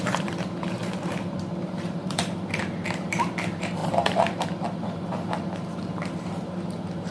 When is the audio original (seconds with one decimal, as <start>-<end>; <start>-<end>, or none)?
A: none